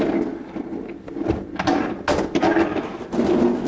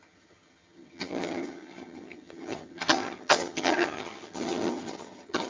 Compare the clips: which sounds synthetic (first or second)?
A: second